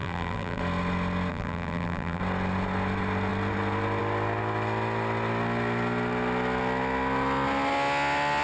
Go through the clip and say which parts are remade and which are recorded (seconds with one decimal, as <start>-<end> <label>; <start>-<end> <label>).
0.0-0.6 remade; 0.6-1.3 recorded; 1.3-2.2 remade; 2.2-8.4 recorded